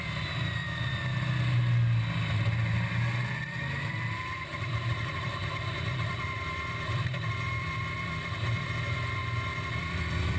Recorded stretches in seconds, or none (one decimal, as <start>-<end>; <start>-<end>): 0.0-3.4; 9.2-9.8